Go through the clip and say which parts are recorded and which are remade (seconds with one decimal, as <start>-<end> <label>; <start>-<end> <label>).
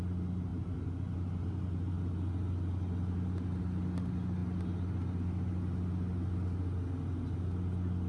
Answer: 0.0-8.1 recorded